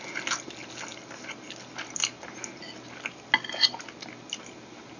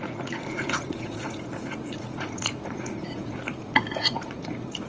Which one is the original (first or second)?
first